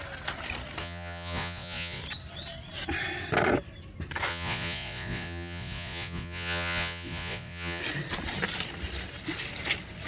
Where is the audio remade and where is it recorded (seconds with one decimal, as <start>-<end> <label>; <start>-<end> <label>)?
0.0-0.8 recorded; 0.8-2.0 remade; 2.0-4.3 recorded; 4.3-7.8 remade; 7.8-10.1 recorded